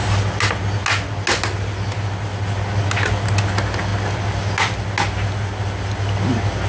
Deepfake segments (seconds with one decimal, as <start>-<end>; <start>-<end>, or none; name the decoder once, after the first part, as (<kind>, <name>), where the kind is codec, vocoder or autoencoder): none